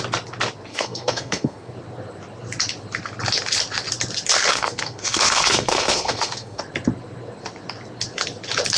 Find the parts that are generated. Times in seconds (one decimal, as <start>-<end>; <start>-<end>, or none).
0.7-1.7; 4.5-6.6